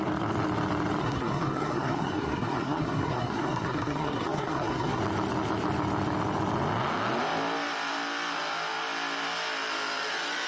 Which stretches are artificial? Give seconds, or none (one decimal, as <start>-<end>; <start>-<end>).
1.0-5.0